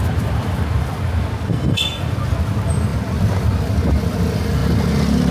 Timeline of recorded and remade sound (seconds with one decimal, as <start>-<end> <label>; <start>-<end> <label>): 0.0-1.5 recorded; 1.5-2.0 remade; 2.0-5.3 recorded